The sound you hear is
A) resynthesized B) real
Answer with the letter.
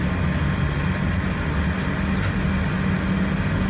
B